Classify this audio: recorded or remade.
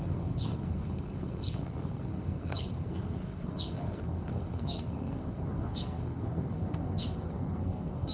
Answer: remade